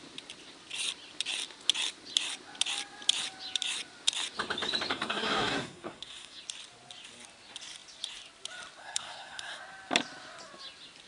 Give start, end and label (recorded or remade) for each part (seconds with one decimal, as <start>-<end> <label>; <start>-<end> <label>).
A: 0.0-4.9 recorded; 4.9-6.4 remade; 6.4-8.8 recorded; 8.8-9.6 remade; 9.6-11.1 recorded